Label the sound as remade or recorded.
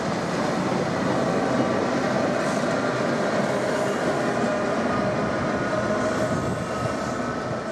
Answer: recorded